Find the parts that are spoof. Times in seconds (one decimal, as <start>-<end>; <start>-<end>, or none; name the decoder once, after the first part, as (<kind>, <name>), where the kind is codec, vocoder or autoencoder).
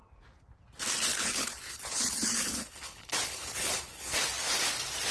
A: 1.1-4.2 (codec, HILCodec)